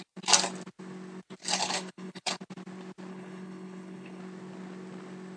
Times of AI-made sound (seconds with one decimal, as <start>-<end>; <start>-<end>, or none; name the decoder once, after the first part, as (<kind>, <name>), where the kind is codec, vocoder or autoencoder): 1.4-2.4 (codec, HILCodec); 3.1-4.2